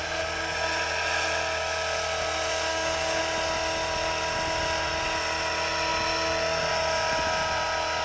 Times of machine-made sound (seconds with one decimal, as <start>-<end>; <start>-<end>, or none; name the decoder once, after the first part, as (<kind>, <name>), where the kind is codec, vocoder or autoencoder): 2.7-3.2 (codec, DAC)